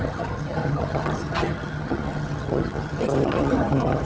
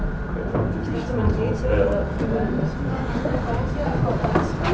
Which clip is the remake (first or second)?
first